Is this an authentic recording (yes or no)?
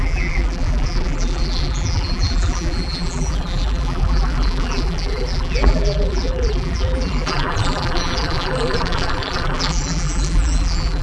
no